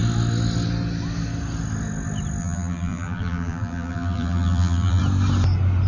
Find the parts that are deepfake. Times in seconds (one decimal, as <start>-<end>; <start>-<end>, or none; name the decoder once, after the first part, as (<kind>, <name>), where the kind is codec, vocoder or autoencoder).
2.4-5.0 (vocoder, BigVGAN v2)